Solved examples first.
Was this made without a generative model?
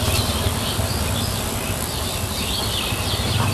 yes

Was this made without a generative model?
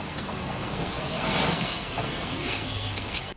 no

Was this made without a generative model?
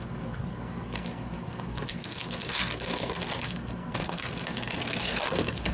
no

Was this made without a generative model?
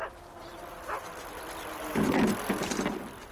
yes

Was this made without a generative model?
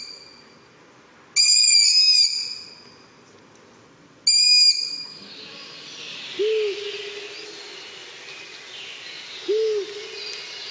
yes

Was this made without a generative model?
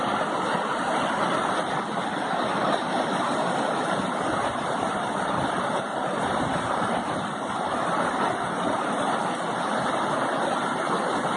yes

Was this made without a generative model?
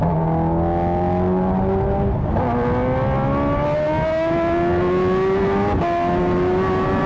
yes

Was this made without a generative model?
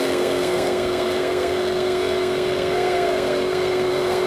no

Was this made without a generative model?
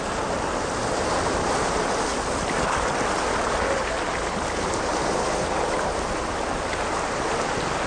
yes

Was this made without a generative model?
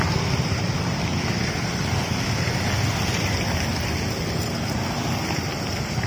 yes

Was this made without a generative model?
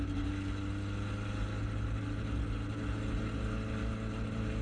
yes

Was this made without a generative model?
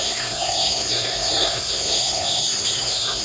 no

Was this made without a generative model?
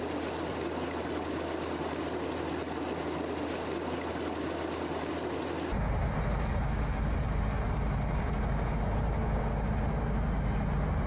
yes